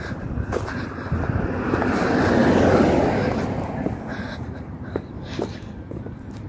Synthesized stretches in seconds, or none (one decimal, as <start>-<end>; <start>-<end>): none